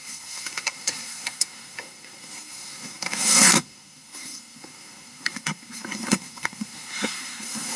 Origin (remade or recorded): remade